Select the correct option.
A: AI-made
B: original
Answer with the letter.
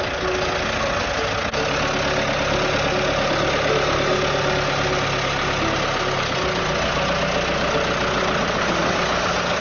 B